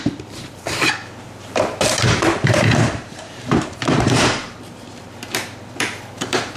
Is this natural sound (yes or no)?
no